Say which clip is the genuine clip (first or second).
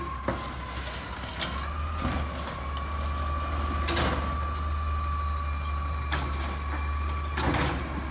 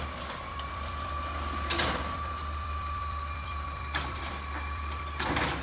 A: first